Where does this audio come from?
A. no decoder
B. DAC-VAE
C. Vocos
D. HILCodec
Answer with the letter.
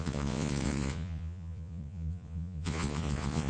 C